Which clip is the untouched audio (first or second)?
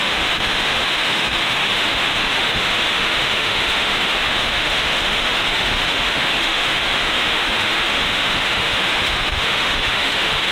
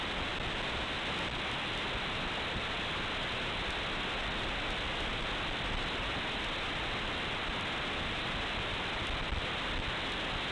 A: second